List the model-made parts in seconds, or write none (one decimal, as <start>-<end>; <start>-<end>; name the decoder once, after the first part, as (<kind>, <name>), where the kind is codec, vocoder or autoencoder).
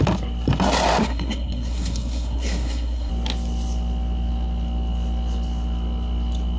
1.0-3.1 (codec, SNAC)